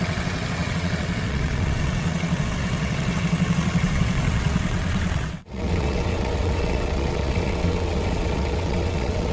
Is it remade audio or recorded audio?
remade